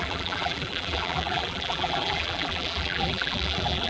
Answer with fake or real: fake